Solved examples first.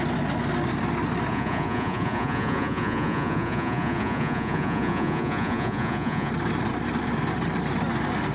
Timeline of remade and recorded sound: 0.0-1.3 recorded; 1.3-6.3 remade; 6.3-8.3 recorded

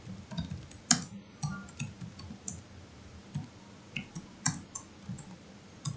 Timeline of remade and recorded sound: 0.0-6.0 recorded